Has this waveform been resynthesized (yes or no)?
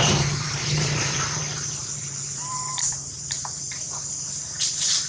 yes